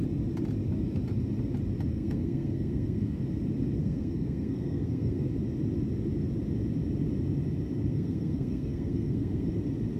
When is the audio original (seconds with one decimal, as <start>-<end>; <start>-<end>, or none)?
0.0-1.9; 3.2-3.8; 5.3-7.9; 9.5-10.0